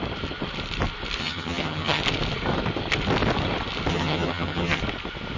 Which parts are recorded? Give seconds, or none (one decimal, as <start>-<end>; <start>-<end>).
0.0-1.2; 2.0-3.9; 4.8-5.4